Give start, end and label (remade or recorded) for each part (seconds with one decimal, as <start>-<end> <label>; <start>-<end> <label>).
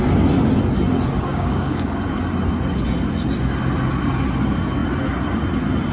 0.0-1.3 recorded; 1.3-2.0 remade; 2.0-5.9 recorded